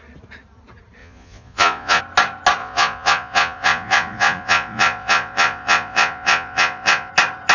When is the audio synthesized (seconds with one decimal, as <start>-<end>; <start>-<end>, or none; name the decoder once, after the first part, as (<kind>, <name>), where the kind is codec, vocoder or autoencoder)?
1.0-2.0 (vocoder, Vocos); 2.6-7.1